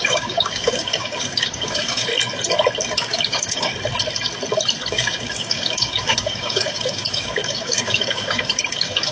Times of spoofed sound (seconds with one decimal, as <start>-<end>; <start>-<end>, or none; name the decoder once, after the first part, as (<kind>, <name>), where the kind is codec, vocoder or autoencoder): 0.0-2.1 (codec, DAC); 2.9-3.7; 4.9-9.1